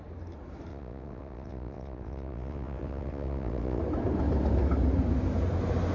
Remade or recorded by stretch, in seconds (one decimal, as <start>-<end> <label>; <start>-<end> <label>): 0.0-0.7 recorded; 0.7-3.8 remade; 3.8-5.9 recorded